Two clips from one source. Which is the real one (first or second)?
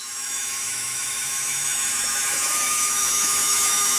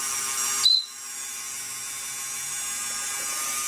second